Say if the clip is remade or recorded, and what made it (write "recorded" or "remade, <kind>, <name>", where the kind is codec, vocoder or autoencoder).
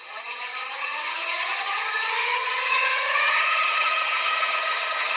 remade, vocoder, HiFi-GAN